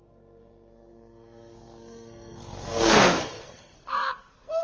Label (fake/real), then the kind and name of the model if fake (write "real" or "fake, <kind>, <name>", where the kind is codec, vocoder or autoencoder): fake, codec, SNAC